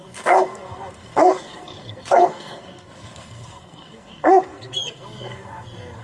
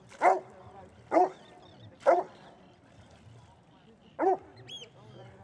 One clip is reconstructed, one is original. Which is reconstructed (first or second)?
first